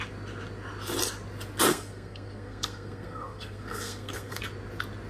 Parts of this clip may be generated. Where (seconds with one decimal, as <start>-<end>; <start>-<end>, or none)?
1.7-4.4